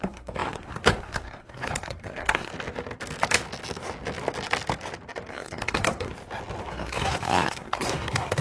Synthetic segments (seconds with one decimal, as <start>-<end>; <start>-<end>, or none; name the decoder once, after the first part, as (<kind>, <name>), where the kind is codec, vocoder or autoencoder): 0.0-2.5 (codec, SNAC); 5.3-6.1; 6.6-8.4